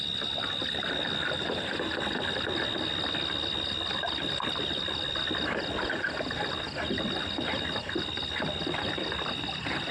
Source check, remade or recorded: recorded